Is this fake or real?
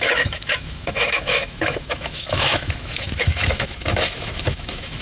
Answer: fake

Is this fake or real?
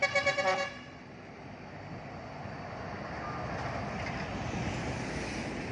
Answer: real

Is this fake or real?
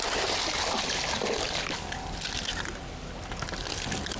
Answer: real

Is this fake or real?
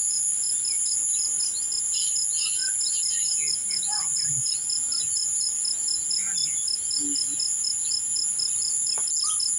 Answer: real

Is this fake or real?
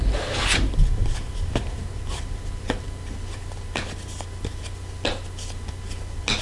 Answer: real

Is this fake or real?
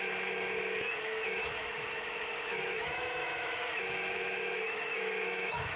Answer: fake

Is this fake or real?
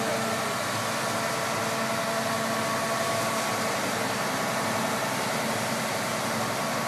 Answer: real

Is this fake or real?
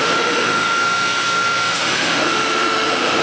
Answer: fake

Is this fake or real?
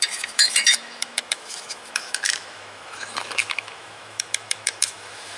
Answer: fake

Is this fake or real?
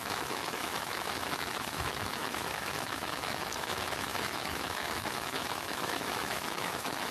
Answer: fake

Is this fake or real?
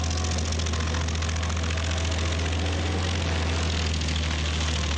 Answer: real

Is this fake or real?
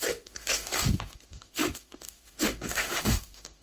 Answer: fake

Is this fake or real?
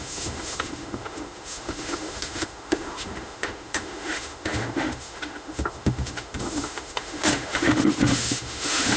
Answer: fake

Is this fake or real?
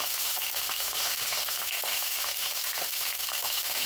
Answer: fake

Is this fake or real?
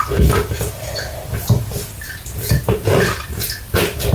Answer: real